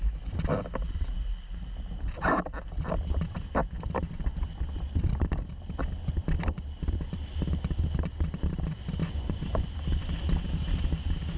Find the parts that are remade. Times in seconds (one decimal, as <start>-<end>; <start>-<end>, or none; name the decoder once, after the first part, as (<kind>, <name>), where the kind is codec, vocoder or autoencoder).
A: 9.0-9.7 (vocoder, Vocos)